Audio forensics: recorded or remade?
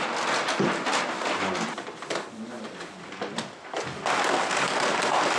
recorded